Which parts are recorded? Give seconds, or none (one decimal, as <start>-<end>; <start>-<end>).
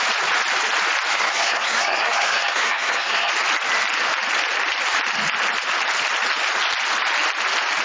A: 0.0-1.1; 3.3-7.8